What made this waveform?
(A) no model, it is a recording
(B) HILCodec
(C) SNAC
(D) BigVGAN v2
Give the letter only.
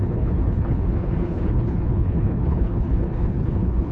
B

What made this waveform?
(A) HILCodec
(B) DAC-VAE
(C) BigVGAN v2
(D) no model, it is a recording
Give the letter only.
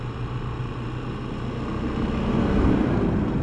D